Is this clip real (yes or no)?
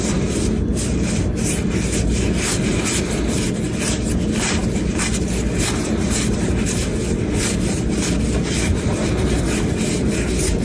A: yes